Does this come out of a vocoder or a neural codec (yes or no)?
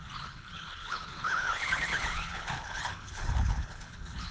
yes